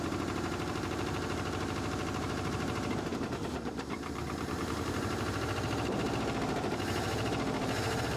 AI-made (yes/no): yes